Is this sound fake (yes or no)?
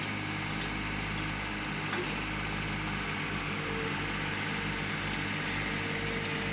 no